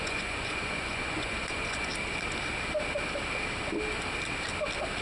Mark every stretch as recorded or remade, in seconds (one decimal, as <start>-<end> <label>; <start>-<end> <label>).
0.0-1.9 remade; 1.9-5.0 recorded